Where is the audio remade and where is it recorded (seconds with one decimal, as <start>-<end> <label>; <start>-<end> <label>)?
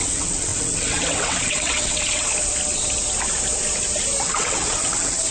0.0-2.3 remade; 2.3-4.2 recorded; 4.2-5.3 remade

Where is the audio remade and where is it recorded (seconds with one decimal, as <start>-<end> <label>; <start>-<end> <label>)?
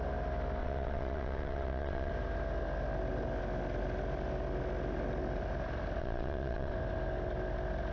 0.0-0.6 recorded; 0.6-2.1 remade; 2.1-6.0 recorded; 6.0-6.7 remade; 6.7-7.9 recorded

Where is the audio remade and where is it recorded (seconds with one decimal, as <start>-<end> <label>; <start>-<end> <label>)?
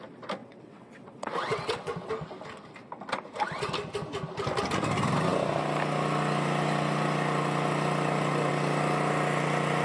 0.0-0.4 recorded; 0.4-2.1 remade; 2.1-9.8 recorded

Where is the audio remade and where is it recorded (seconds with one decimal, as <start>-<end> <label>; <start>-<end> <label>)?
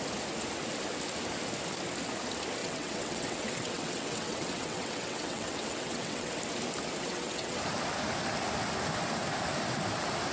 0.0-2.6 recorded; 2.6-6.3 remade; 6.3-7.0 recorded; 7.0-7.6 remade; 7.6-10.3 recorded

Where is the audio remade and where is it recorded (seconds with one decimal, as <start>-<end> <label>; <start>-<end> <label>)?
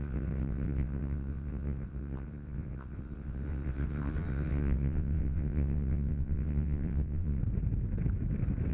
0.0-7.4 remade; 7.4-8.7 recorded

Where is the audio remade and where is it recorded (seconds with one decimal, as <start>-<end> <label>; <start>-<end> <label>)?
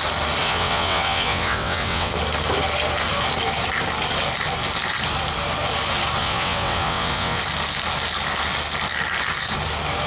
0.0-0.4 recorded; 0.4-2.1 remade; 2.1-6.2 recorded; 6.2-7.4 remade; 7.4-10.1 recorded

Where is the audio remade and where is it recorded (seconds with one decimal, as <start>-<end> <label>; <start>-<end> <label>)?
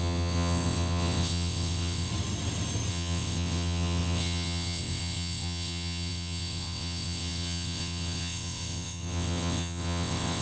0.0-2.1 remade; 2.1-2.9 recorded; 2.9-10.4 remade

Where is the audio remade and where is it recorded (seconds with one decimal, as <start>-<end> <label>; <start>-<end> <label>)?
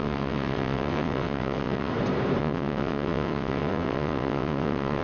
0.0-1.9 remade; 1.9-2.4 recorded; 2.4-5.0 remade